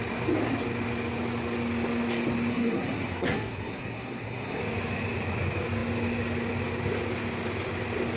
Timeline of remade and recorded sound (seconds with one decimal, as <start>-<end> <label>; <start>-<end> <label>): 0.0-2.5 recorded; 2.5-4.6 remade; 4.6-8.2 recorded